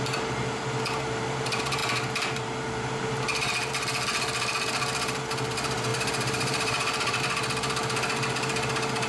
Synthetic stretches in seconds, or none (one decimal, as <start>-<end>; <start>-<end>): 5.9-7.2